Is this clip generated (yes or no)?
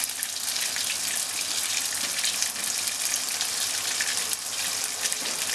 no